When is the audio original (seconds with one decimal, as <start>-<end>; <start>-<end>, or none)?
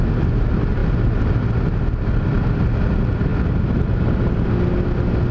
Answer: 0.0-5.3